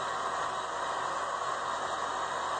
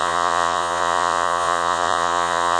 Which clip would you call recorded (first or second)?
first